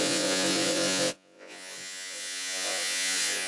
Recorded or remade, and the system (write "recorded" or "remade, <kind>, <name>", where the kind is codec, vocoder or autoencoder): remade, vocoder, Vocos